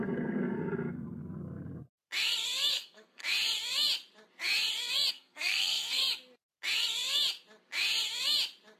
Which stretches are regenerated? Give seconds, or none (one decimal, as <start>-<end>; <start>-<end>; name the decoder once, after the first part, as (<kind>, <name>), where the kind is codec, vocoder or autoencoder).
0.0-1.2 (codec, SNAC); 2.7-3.2; 5.1-6.0

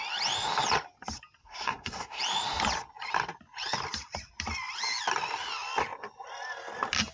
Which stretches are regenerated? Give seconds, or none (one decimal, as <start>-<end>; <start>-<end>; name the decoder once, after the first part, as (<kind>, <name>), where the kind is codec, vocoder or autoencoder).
1.4-2.2 (codec, SNAC)

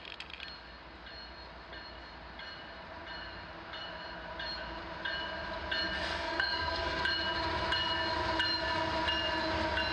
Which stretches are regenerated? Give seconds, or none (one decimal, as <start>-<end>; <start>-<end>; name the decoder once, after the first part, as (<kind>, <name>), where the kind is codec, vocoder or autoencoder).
6.0-7.0 (codec, SNAC)

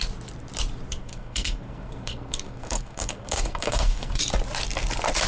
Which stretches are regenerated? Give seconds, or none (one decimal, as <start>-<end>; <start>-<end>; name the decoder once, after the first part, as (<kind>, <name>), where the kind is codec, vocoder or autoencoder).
1.0-4.2 (codec, SNAC)

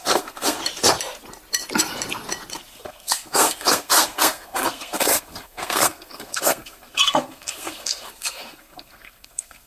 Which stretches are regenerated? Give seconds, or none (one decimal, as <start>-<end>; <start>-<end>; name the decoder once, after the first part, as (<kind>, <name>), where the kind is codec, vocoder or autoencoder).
0.0-0.6 (codec, SNAC); 2.7-9.7